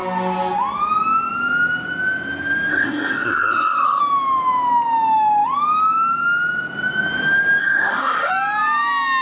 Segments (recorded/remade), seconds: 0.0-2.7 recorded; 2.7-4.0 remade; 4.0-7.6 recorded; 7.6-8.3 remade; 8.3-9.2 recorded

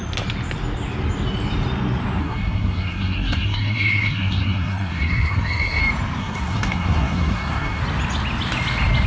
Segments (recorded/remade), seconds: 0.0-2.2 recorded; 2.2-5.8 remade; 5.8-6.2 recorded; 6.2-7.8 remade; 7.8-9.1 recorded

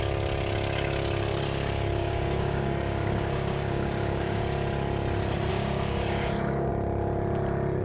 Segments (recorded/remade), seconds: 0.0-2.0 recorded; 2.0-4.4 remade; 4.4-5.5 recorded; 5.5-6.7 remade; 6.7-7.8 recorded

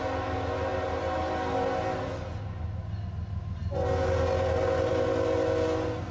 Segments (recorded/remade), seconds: 0.0-6.1 recorded

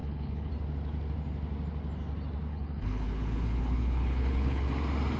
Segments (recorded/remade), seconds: 0.0-0.5 remade; 0.5-2.5 recorded; 2.5-4.7 remade; 4.7-5.2 recorded

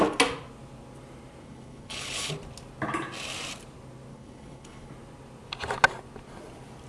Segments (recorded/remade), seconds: 0.0-1.4 recorded; 1.4-2.3 remade; 2.3-4.1 recorded; 4.1-4.9 remade; 4.9-6.9 recorded

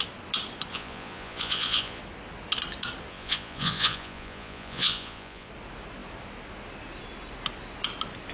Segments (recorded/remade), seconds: 0.0-0.7 recorded; 0.7-2.0 remade; 2.0-3.1 recorded; 3.1-5.5 remade; 5.5-8.3 recorded